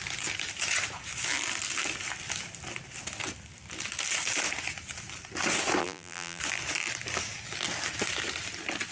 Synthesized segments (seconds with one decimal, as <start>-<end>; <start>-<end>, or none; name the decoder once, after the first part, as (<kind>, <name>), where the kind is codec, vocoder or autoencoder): 5.8-6.4 (vocoder, BigVGAN v2)